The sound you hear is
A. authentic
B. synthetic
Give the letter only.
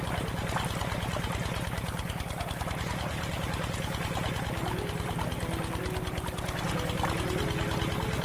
A